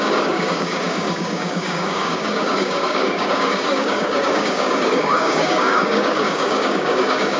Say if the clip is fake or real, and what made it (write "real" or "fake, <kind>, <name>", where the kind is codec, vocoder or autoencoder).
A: fake, codec, DAC